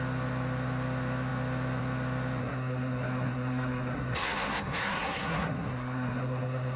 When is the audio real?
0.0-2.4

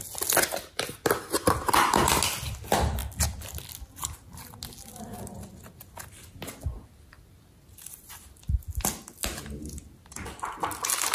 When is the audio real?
0.0-11.1

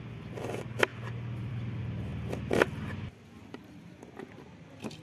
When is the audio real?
0.0-5.0